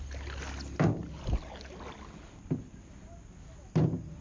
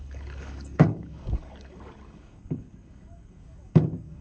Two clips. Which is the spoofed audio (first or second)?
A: second